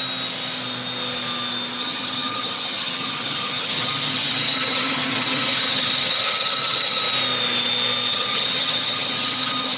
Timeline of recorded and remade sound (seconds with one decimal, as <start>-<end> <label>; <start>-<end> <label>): 0.0-1.8 recorded; 1.8-7.0 remade; 7.0-8.1 recorded; 8.1-9.8 remade